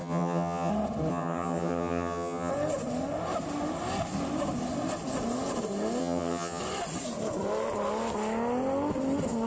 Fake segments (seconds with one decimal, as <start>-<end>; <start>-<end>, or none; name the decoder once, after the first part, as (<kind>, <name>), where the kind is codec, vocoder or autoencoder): 0.0-0.7 (vocoder, HiFi-GAN); 1.1-2.5; 6.0-6.6